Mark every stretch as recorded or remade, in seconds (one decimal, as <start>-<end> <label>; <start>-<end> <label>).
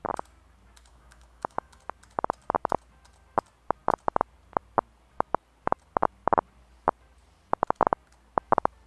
0.0-0.9 recorded; 0.9-1.8 remade; 1.8-8.9 recorded